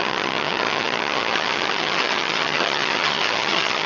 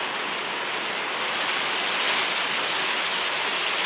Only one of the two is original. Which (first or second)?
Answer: second